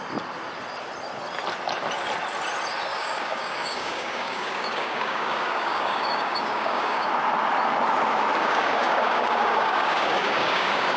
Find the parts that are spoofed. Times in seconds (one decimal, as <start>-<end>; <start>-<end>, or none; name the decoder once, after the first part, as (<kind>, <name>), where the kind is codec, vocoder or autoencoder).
2.9-7.1 (codec, DAC); 8.4-11.0